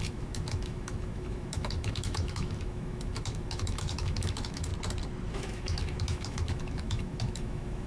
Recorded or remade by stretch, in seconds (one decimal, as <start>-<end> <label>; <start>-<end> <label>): 0.0-4.7 remade; 4.7-5.3 recorded; 5.3-7.9 remade